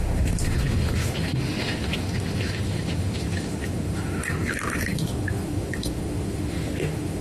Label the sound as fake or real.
fake